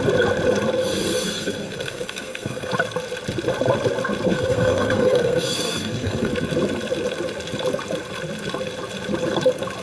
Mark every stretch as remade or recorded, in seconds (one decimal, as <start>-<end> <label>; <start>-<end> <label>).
0.0-1.0 recorded; 1.0-2.7 remade; 2.7-4.3 recorded; 4.3-6.3 remade; 6.3-9.8 recorded